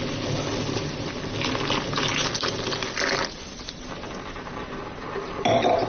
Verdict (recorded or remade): recorded